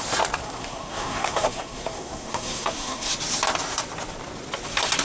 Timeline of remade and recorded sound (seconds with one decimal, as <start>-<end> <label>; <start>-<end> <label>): 0.0-0.4 recorded; 0.4-3.1 remade; 3.1-5.0 recorded